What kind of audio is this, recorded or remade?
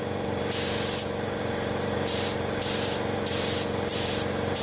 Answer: remade